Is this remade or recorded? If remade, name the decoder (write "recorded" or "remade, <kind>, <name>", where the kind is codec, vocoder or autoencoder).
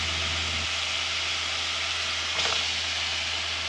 recorded